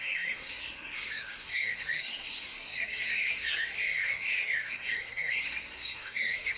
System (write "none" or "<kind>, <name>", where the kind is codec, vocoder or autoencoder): codec, SNAC